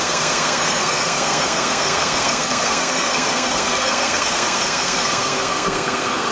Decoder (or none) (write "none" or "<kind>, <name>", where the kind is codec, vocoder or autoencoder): codec, SNAC